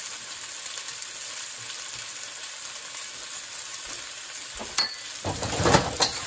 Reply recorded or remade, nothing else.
recorded